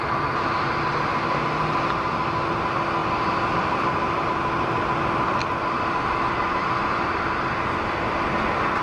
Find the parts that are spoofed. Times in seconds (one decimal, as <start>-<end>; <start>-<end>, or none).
3.0-4.3